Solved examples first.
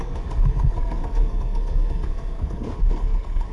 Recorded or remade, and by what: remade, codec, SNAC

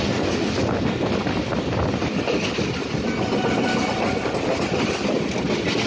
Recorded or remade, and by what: recorded